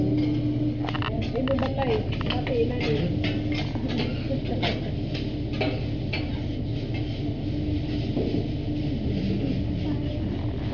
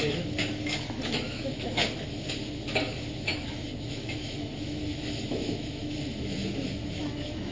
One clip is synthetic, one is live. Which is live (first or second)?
first